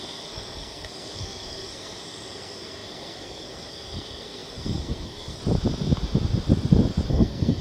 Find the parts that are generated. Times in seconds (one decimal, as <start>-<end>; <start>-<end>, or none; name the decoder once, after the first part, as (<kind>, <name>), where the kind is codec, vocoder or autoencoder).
0.0-5.4 (codec, SNAC); 7.1-7.6

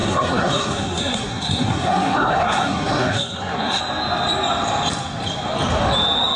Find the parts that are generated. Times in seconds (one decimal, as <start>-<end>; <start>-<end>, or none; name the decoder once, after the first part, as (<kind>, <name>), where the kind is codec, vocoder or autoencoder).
0.0-3.8 (codec, SNAC)